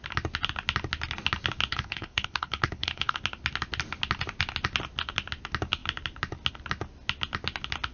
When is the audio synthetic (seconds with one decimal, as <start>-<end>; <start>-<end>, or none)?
1.7-3.2